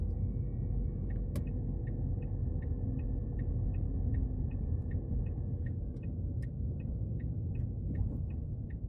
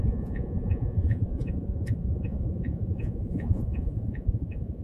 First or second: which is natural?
first